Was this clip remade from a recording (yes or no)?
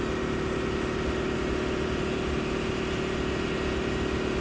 no